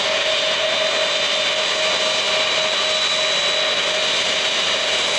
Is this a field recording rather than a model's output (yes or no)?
yes